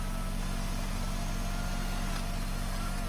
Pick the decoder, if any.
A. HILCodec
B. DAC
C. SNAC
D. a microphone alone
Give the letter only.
D